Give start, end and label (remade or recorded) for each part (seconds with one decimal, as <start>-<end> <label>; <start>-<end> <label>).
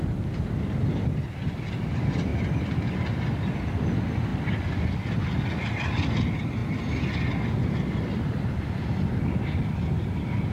0.0-10.5 recorded